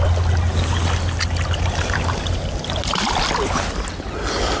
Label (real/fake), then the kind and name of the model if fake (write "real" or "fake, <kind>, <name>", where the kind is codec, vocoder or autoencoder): real